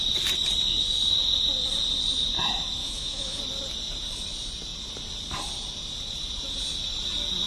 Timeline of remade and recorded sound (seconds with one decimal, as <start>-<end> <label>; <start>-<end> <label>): 0.0-2.8 recorded; 2.8-3.4 remade; 3.4-7.5 recorded